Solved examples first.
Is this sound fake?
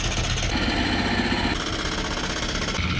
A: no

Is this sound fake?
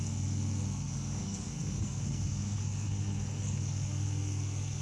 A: yes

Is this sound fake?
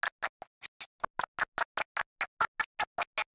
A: no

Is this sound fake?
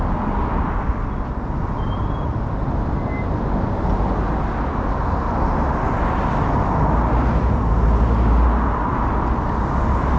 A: no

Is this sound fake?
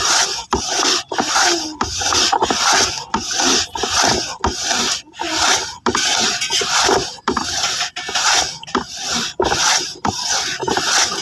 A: no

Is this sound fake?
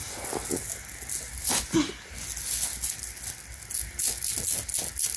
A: no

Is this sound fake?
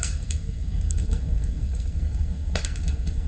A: yes